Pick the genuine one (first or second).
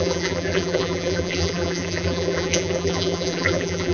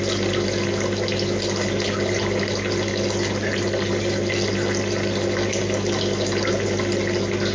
second